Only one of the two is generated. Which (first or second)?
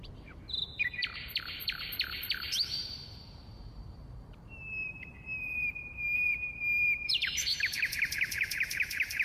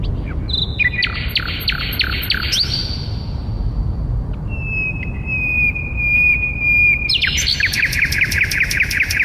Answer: first